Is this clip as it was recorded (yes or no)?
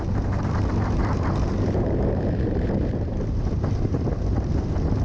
no